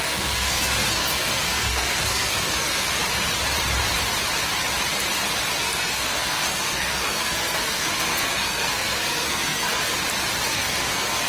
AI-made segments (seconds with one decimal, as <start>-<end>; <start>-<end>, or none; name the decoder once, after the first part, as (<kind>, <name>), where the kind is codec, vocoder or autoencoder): 0.0-3.0 (codec, SNAC); 5.6-9.9; 10.5-11.3